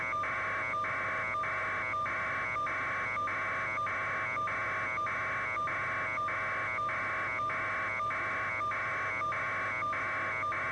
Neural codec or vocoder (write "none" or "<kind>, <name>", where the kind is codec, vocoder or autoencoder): none